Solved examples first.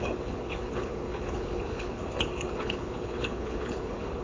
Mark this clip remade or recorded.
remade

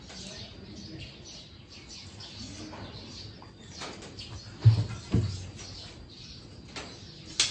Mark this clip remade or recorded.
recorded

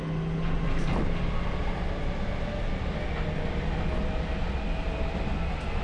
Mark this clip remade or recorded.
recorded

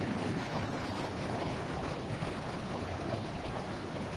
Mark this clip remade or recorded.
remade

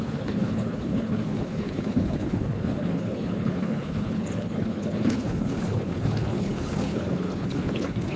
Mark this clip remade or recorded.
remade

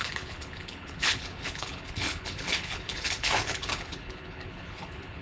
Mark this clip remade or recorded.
remade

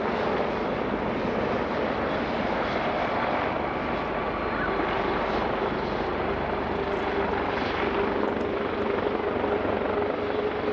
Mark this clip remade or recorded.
recorded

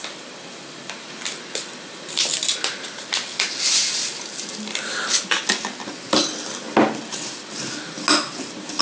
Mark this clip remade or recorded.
recorded